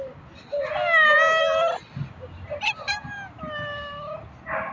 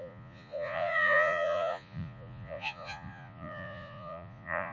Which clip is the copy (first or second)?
second